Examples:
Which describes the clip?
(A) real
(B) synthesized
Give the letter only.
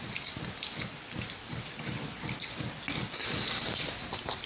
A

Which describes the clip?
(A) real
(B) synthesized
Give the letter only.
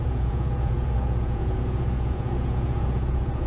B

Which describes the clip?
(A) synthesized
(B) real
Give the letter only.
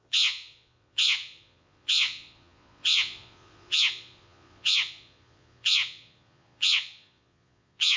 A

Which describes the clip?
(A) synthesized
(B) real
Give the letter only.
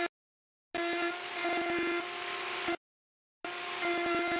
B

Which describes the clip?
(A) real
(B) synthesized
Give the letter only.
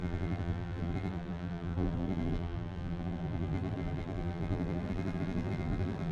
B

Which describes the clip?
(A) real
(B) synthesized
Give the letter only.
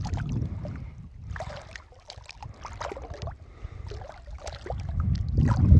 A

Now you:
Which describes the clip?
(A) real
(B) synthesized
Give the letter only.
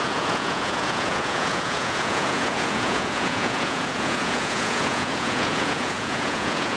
B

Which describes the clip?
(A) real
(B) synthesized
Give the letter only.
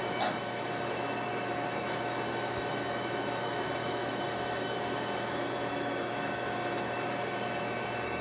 B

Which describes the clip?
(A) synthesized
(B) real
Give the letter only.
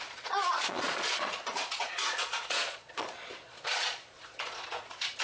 A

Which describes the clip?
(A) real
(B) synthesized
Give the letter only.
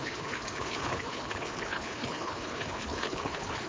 B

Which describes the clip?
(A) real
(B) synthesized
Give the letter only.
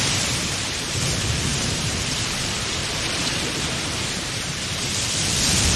B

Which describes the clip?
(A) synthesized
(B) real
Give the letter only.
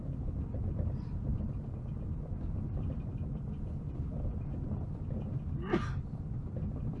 B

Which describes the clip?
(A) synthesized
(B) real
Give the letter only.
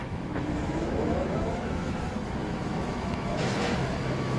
A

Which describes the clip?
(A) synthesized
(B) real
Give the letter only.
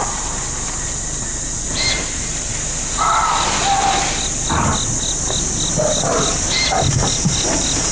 B